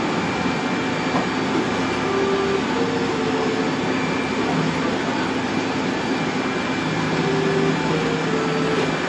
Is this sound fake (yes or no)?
no